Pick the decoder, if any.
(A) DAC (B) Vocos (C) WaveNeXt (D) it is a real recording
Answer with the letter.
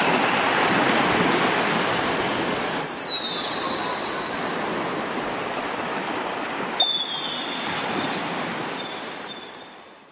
D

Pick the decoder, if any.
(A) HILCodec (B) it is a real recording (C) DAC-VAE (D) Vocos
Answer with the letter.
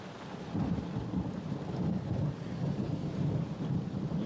B